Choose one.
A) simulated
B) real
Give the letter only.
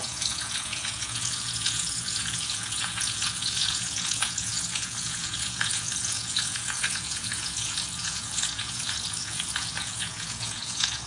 A